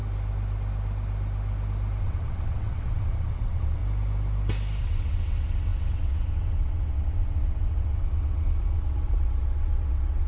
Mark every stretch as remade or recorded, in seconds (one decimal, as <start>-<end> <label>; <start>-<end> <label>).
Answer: 0.0-2.0 recorded; 2.0-3.8 remade; 3.8-4.8 recorded; 4.8-10.3 remade